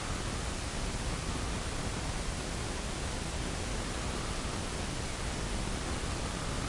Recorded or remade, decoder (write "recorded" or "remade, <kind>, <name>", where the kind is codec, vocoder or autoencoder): recorded